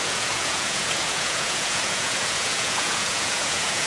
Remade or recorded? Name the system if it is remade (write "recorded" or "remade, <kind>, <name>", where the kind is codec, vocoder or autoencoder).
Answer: remade, vocoder, Vocos